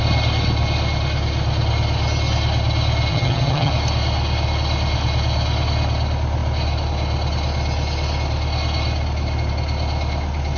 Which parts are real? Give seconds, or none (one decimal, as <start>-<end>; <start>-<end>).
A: 0.0-3.1; 3.7-10.6